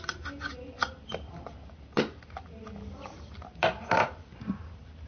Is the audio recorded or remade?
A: recorded